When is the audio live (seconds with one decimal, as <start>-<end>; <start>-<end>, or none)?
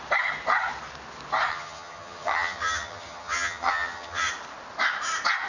0.0-1.5; 4.3-5.5